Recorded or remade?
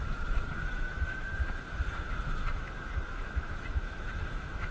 remade